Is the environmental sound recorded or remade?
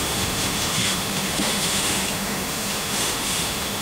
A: remade